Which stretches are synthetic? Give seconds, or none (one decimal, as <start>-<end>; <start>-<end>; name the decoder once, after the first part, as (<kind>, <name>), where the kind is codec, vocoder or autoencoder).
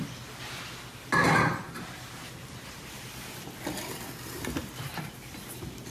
1.2-2.8 (vocoder, BigVGAN v2)